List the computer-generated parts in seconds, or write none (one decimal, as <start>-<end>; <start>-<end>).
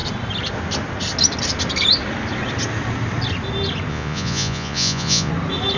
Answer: 3.9-5.3